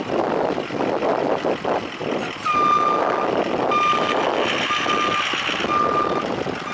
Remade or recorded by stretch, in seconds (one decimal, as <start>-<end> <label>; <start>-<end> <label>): 0.0-6.7 recorded